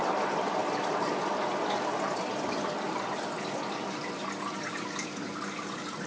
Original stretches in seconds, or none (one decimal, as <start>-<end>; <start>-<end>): 0.0-6.1